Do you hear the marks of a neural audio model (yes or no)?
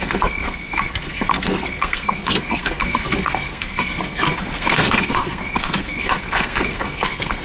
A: yes